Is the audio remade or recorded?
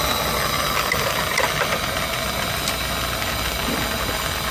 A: recorded